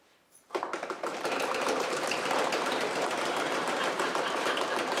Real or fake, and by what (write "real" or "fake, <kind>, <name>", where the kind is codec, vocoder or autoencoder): fake, vocoder, BigVGAN v2